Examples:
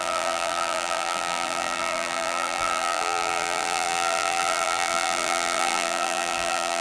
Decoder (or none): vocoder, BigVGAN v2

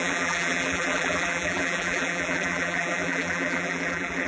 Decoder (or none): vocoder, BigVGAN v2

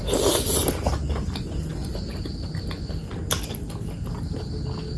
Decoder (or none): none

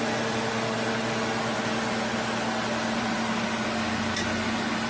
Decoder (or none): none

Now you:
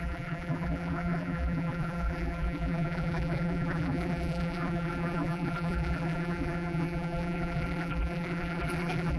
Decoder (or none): vocoder, BigVGAN v2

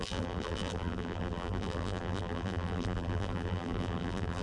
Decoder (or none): vocoder, BigVGAN v2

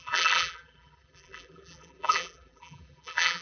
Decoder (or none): vocoder, BigVGAN v2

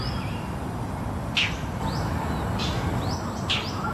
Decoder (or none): none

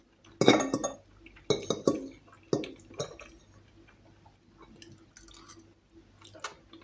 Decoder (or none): none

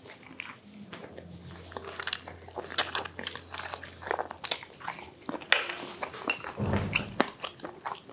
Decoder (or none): none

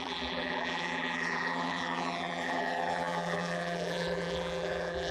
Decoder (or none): vocoder, BigVGAN v2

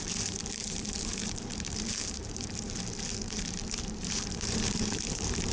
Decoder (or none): vocoder, BigVGAN v2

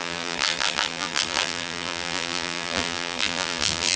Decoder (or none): vocoder, BigVGAN v2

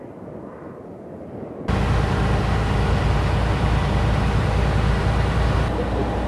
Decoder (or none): none